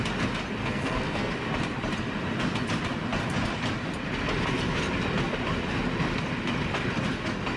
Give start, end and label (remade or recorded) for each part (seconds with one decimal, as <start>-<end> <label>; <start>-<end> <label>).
0.0-0.6 recorded; 0.6-1.3 remade; 1.3-7.6 recorded